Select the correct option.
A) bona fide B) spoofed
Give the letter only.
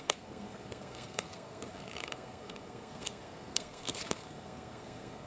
B